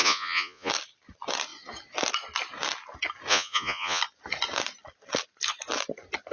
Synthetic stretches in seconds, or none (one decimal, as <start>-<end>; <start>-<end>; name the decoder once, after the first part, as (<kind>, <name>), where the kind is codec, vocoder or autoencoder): 0.0-0.7 (vocoder, Vocos); 3.3-4.0